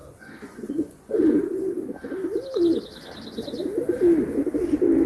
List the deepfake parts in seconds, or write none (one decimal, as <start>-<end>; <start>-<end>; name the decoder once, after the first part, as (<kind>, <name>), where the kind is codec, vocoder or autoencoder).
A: 0.0-1.1 (vocoder, Vocos)